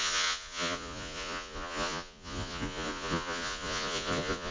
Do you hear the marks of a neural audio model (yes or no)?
yes